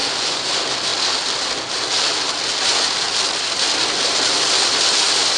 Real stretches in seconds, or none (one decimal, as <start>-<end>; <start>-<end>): 0.5-5.4